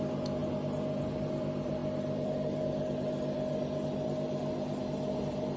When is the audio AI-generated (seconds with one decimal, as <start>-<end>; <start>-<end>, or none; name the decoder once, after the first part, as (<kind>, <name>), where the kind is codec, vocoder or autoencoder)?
none